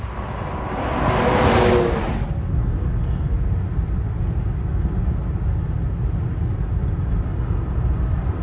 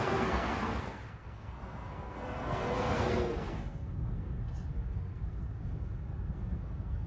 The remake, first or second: second